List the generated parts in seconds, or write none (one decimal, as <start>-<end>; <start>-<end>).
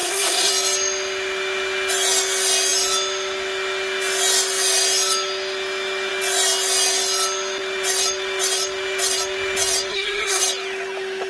0.0-0.5; 9.9-10.4